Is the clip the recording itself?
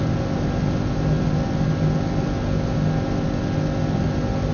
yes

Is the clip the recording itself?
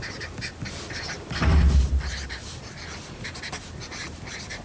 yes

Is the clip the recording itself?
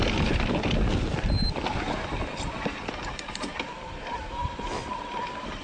yes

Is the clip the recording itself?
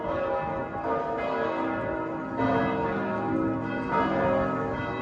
yes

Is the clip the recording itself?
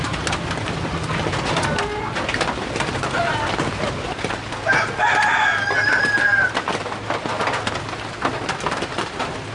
yes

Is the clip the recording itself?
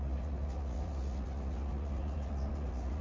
no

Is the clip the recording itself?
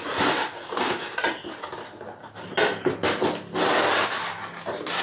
yes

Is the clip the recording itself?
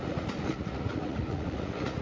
no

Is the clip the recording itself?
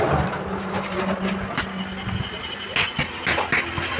yes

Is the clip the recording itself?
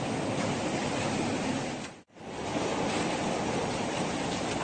yes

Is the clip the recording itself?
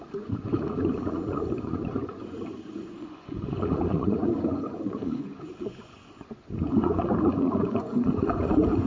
no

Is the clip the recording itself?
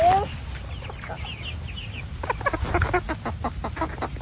yes